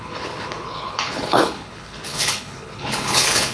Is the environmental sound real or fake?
fake